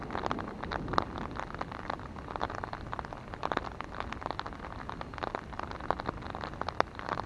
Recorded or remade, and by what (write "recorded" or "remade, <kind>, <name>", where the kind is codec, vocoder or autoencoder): recorded